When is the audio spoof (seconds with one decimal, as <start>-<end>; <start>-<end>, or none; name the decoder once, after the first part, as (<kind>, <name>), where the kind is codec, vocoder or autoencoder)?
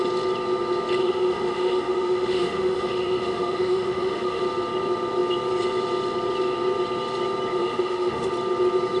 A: 1.0-4.4 (autoencoder, DAC-VAE); 7.6-8.3